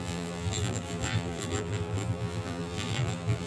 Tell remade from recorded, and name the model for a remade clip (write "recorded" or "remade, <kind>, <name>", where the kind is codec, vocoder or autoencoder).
remade, vocoder, BigVGAN v2